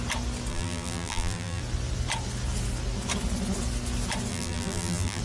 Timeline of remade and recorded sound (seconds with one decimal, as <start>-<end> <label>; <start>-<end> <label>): 0.0-0.5 recorded; 0.5-1.6 remade; 1.6-4.3 recorded; 4.3-5.2 remade